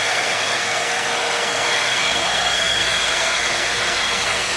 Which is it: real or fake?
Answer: fake